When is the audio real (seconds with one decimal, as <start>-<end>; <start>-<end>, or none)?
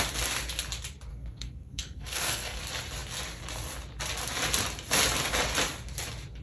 0.0-1.1; 2.6-6.4